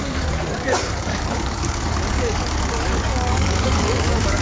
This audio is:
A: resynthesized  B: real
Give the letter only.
A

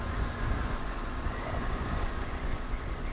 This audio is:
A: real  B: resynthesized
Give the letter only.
B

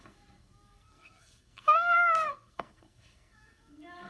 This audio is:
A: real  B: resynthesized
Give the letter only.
B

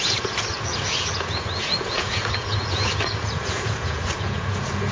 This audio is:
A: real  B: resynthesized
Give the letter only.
B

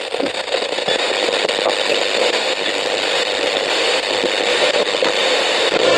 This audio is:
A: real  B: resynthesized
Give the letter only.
A